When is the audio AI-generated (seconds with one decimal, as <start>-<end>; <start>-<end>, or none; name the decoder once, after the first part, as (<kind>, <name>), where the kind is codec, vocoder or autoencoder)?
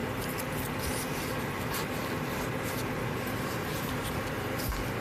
none